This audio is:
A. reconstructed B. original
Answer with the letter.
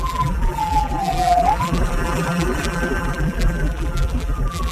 A